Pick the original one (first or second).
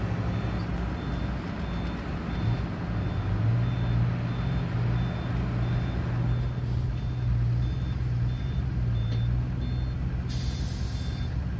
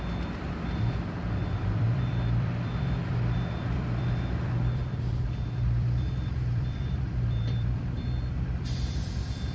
first